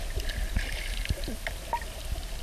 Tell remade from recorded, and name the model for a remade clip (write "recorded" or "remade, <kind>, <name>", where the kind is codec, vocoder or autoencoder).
recorded